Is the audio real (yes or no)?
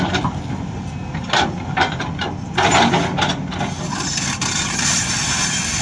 yes